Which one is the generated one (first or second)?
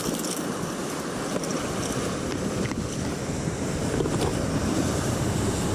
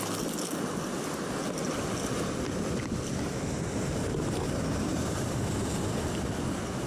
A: first